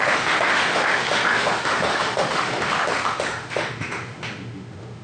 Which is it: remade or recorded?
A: remade